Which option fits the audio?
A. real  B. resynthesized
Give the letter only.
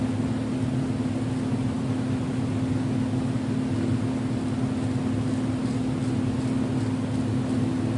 A